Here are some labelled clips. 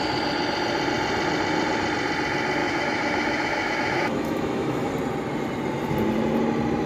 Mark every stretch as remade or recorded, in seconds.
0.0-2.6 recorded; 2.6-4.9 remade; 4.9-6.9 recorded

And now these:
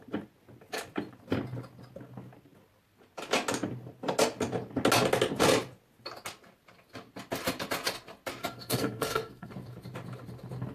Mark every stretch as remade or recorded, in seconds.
0.0-8.4 recorded; 8.4-9.5 remade; 9.5-10.7 recorded

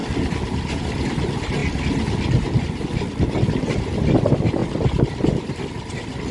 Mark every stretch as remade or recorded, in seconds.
0.0-6.3 recorded

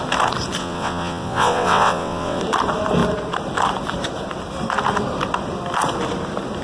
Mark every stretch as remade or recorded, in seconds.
0.0-0.6 recorded; 0.6-2.4 remade; 2.4-6.6 recorded

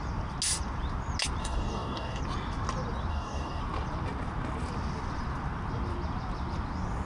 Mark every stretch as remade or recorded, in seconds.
0.0-1.4 recorded; 1.4-2.2 remade; 2.2-3.1 recorded; 3.1-3.6 remade; 3.6-7.1 recorded

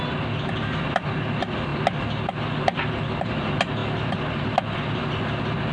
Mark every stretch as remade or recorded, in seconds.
0.0-5.7 recorded